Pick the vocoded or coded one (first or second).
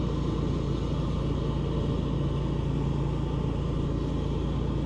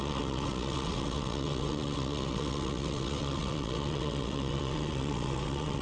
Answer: second